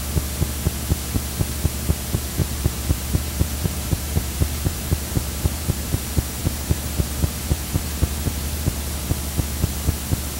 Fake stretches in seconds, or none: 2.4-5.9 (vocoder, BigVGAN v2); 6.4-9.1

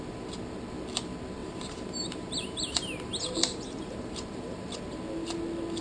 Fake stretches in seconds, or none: 1.4-4.7 (vocoder, BigVGAN v2)

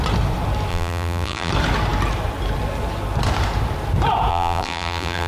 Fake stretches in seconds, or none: 0.7-1.5 (vocoder, BigVGAN v2); 4.3-5.3

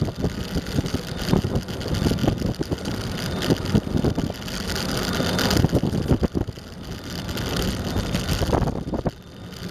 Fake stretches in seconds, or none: none